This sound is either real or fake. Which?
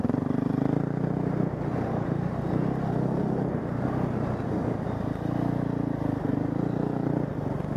real